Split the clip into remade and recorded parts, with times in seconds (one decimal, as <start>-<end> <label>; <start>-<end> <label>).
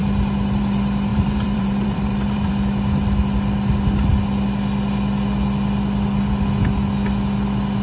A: 0.0-1.1 recorded; 1.1-2.5 remade; 2.5-7.8 recorded